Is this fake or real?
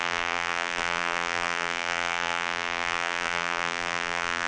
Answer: fake